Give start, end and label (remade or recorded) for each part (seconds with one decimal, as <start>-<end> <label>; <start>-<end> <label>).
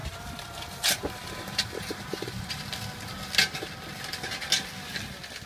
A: 0.0-2.5 remade; 2.5-5.5 recorded